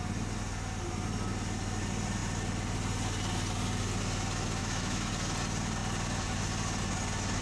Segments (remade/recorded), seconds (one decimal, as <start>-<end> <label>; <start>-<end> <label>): 0.0-4.6 recorded; 4.6-5.1 remade; 5.1-7.4 recorded